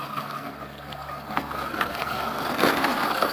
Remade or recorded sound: remade